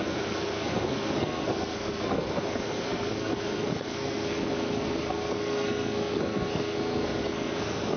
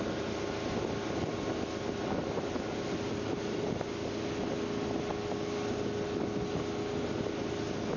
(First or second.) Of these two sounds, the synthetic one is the first